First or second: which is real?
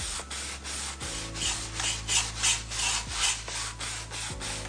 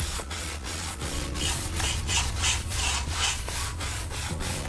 first